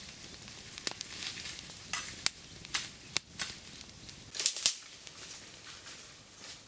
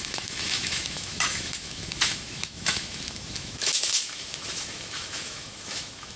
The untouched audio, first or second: first